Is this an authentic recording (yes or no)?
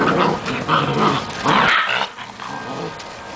yes